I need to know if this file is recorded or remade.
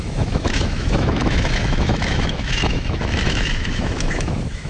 remade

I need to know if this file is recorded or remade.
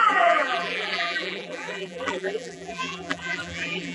remade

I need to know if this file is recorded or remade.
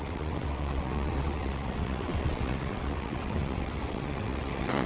remade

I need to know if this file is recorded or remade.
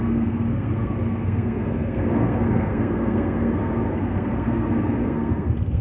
remade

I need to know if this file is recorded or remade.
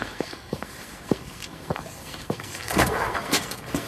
remade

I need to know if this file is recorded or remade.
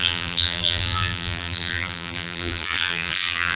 remade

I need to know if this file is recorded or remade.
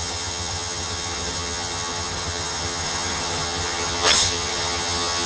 remade